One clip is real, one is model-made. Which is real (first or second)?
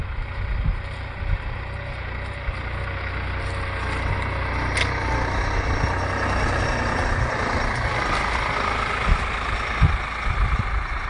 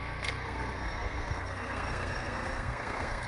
first